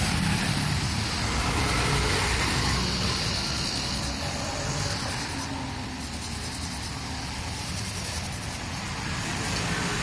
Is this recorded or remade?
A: recorded